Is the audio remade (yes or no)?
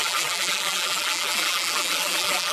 yes